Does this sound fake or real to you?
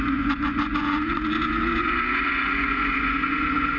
fake